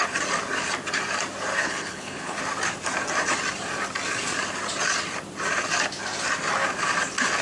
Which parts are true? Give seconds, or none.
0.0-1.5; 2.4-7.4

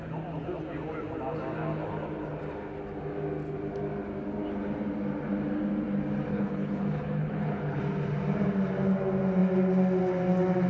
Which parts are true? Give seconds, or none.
0.0-6.3; 7.8-10.7

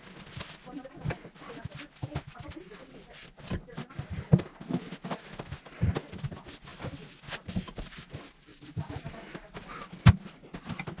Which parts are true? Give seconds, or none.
0.0-11.0

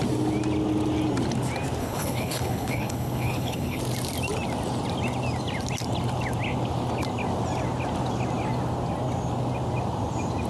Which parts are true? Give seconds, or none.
0.0-1.8; 3.8-10.5

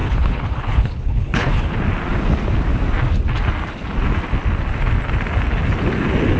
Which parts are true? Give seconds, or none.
1.7-6.4

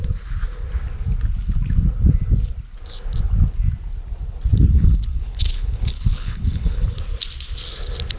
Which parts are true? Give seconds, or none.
0.0-4.5; 7.0-8.2

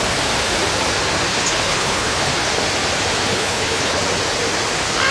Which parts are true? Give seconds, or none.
0.0-1.3; 2.3-3.3; 4.0-5.1